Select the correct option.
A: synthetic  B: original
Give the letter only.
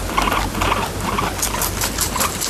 B